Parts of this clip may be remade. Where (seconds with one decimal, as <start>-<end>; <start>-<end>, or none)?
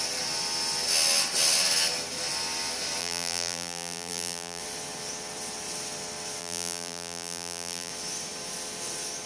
3.0-4.6; 6.4-7.9